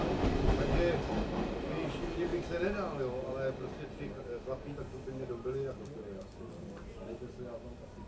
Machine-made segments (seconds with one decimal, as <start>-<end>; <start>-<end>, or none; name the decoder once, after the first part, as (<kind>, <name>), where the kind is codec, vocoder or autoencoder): none